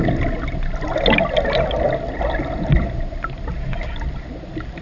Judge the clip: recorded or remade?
recorded